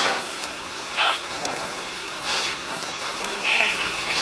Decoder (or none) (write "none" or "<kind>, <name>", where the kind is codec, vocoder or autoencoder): codec, SNAC